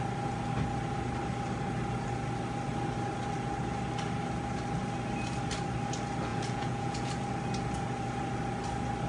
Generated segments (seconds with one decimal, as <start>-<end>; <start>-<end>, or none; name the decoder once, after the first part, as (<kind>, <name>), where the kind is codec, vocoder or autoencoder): 6.3-7.1 (vocoder, Vocos)

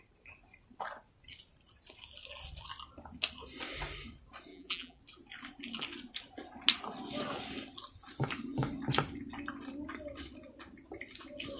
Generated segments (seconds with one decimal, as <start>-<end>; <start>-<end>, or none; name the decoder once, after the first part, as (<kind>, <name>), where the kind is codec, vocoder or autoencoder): 4.5-5.0 (vocoder, BigVGAN v2)